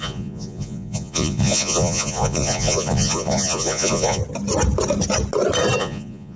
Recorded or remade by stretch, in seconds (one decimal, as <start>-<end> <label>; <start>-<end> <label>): 0.0-4.2 remade; 4.2-5.8 recorded; 5.8-6.4 remade